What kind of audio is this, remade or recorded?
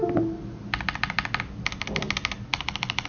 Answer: recorded